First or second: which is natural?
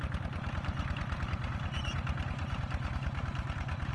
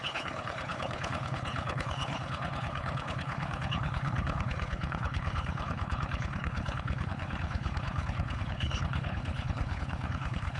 first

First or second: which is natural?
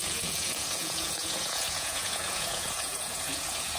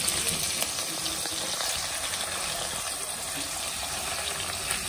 second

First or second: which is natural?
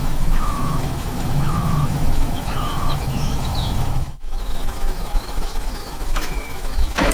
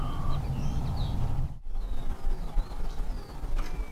second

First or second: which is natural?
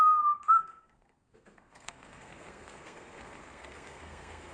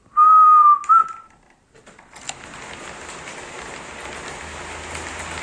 second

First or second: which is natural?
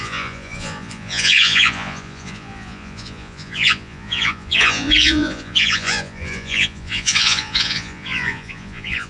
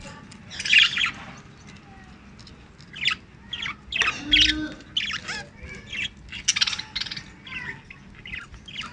second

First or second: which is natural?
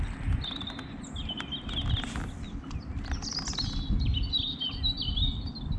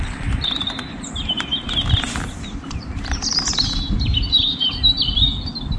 first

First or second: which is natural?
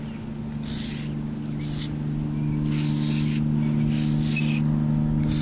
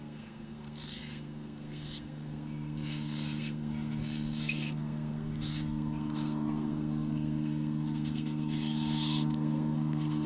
first